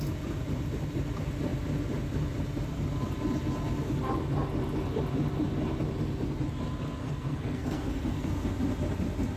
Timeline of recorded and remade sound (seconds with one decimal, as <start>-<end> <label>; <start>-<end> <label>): 0.0-7.0 recorded; 7.0-8.5 remade; 8.5-9.4 recorded